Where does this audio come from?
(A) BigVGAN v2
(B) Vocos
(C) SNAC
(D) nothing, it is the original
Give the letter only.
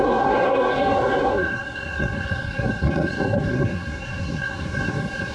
C